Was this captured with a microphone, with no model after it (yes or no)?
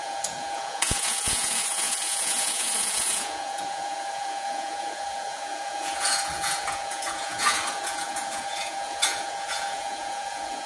no